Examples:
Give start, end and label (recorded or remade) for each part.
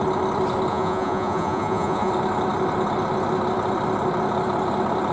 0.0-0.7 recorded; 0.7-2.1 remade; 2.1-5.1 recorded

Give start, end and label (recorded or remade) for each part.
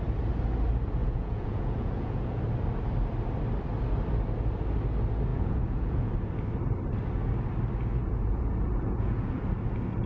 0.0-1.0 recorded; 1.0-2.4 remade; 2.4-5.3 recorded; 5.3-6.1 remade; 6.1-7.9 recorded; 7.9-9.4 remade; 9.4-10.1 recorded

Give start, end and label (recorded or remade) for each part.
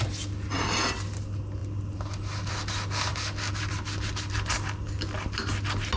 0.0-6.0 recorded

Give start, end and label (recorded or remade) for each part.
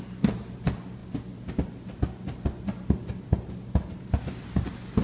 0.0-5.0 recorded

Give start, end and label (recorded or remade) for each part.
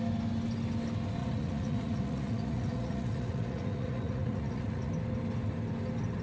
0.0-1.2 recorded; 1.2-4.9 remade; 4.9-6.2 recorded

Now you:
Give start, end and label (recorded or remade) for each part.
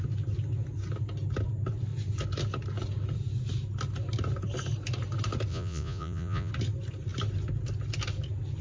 0.0-5.5 recorded; 5.5-6.5 remade; 6.5-8.6 recorded